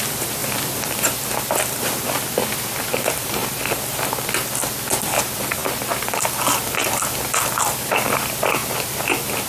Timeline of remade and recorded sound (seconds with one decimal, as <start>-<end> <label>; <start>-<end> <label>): 0.0-3.4 remade; 3.4-5.0 recorded; 5.0-5.6 remade; 5.6-6.9 recorded; 6.9-8.6 remade; 8.6-9.5 recorded